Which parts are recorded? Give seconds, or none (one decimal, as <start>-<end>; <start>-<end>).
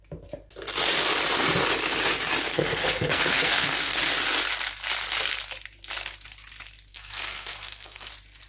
0.0-2.5; 4.0-6.9; 8.1-8.5